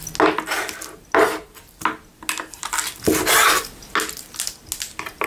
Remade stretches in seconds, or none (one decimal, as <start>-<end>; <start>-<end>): none